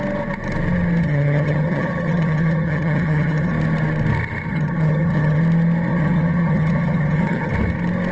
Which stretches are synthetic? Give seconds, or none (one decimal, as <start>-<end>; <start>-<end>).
1.0-3.5; 4.5-5.4; 5.9-7.5